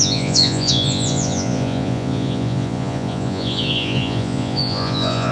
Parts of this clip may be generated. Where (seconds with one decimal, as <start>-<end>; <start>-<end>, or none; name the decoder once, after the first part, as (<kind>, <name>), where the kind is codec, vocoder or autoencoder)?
0.0-5.3 (vocoder, Vocos)